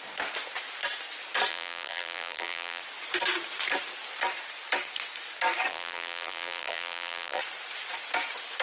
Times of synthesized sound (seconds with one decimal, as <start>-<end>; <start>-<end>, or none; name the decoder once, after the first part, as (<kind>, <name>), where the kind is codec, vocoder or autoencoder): 1.5-2.8 (vocoder, BigVGAN v2); 5.7-7.4